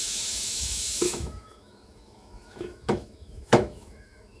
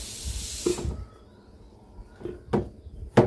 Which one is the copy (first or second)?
first